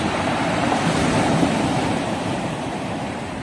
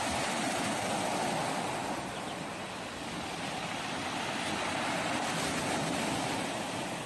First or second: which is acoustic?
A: second